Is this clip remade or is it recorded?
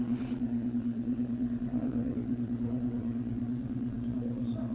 remade